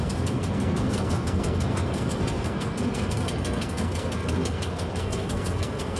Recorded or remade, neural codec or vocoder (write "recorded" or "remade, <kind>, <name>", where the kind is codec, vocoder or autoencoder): remade, codec, SNAC